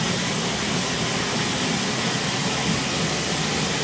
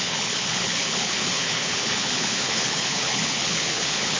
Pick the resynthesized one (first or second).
second